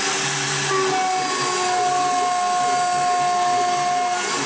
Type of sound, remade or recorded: recorded